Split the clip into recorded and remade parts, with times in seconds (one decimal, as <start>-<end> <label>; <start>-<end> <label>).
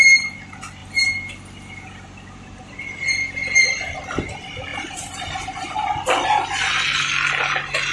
0.0-7.9 recorded